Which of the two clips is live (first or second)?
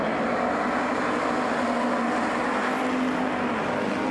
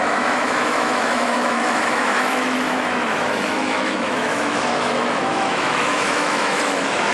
first